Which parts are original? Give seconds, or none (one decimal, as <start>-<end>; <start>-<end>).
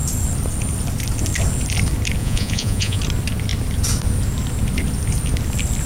0.0-2.2; 3.0-5.9